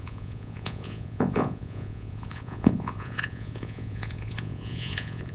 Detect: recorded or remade remade